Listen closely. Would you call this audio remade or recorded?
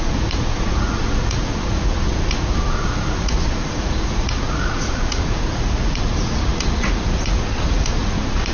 remade